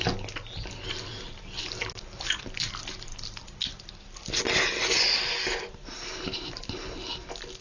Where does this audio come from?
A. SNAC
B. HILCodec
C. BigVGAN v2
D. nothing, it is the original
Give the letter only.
D